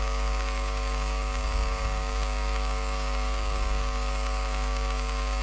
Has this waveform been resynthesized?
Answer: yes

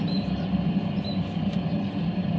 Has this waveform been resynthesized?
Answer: no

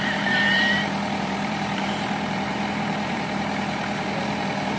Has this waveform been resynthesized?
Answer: yes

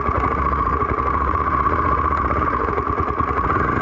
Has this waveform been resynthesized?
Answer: yes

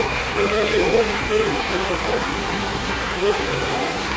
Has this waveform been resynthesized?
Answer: yes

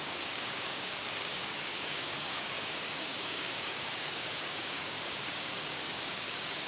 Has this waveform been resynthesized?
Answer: yes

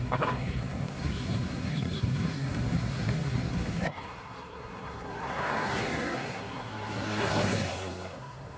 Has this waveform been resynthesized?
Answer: yes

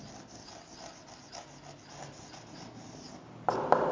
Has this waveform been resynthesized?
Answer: no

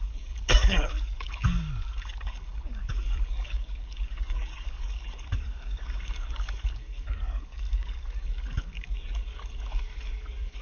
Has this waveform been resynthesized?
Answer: yes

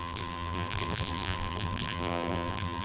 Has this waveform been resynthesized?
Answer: yes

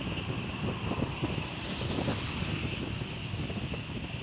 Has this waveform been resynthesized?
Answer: no